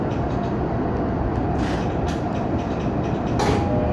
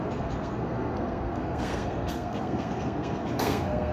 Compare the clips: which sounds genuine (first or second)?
first